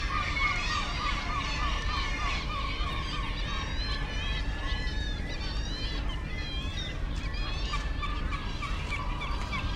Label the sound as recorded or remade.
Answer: remade